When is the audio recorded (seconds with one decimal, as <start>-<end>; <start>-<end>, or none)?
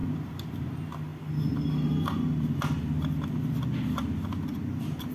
0.0-5.1